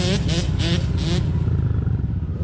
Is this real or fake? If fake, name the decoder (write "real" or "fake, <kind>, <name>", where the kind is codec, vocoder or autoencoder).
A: real